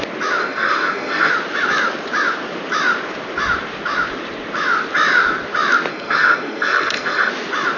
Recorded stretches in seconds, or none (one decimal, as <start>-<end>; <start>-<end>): 0.0-0.4; 1.3-5.9; 7.3-7.8